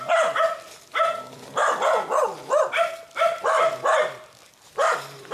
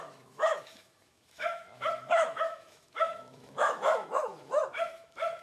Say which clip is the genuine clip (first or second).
first